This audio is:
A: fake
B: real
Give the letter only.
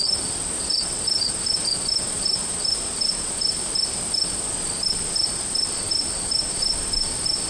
B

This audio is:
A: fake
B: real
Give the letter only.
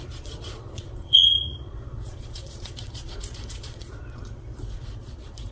A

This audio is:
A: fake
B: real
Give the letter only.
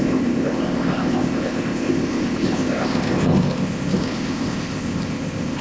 A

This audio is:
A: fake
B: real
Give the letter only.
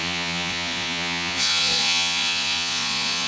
A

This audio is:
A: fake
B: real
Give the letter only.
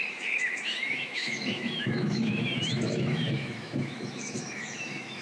A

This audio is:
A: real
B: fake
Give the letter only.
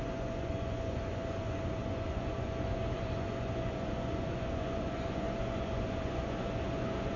B